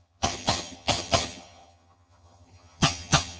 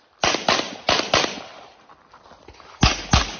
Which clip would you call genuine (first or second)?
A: second